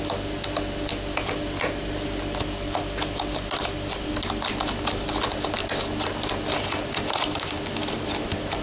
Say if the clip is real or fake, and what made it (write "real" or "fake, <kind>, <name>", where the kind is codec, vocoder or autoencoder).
real